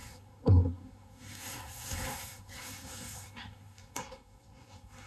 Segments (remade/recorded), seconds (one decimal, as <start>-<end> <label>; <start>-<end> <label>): 0.0-5.1 remade